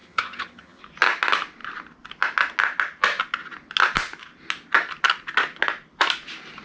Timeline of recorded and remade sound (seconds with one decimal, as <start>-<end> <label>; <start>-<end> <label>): 0.0-0.8 remade; 0.8-6.6 recorded